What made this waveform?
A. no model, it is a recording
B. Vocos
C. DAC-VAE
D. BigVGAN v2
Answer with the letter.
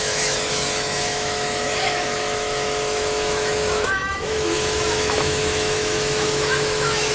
C